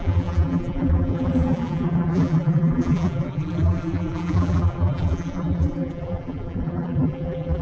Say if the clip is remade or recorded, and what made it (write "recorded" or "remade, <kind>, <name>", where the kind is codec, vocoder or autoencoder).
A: remade, vocoder, BigVGAN v2